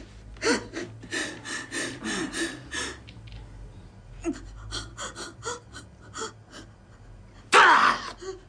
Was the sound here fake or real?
real